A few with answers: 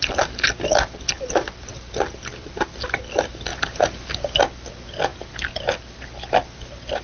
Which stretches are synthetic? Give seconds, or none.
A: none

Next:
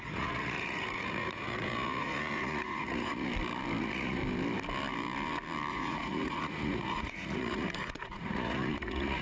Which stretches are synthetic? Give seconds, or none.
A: 0.0-3.3 (vocoder, Vocos); 3.8-4.2; 5.7-9.2

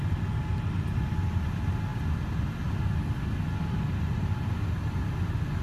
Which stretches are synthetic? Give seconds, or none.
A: none

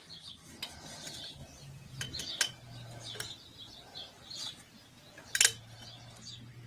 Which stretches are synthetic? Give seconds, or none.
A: none

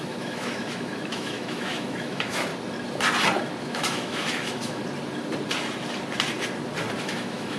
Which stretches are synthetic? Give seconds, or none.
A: 0.0-2.5 (autoencoder, DAC-VAE); 3.6-4.8; 7.0-7.6

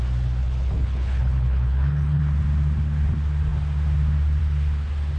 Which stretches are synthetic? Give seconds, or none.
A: 0.4-2.2 (codec, HILCodec)

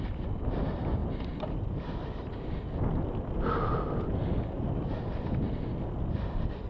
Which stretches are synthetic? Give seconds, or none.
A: none